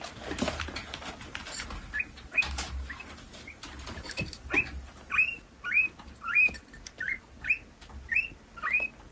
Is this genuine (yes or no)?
yes